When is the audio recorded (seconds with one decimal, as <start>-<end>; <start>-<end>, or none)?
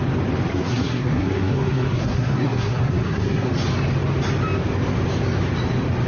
0.0-0.5; 3.5-6.1